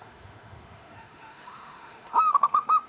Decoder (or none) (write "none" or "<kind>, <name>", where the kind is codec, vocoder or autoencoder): autoencoder, DAC-VAE